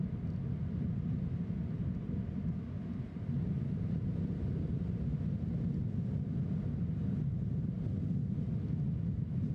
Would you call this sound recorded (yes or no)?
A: yes